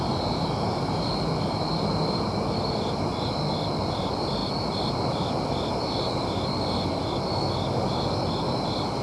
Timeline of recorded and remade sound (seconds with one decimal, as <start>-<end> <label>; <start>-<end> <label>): 0.0-9.0 recorded

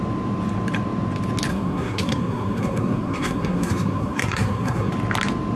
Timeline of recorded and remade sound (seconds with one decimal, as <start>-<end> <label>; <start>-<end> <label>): 0.0-1.5 recorded; 1.5-4.9 remade; 4.9-5.6 recorded

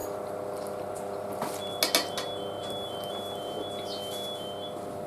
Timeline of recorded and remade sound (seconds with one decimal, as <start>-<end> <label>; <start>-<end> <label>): 0.0-5.1 recorded